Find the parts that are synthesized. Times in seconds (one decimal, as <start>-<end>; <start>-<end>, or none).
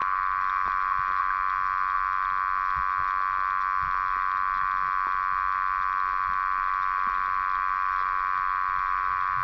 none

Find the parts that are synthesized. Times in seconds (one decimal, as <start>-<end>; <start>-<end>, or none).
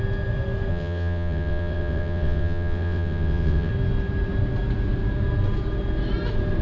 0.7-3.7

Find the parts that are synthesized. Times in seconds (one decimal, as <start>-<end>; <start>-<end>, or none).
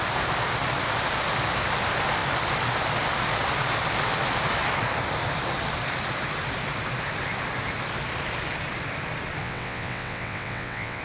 9.4-11.0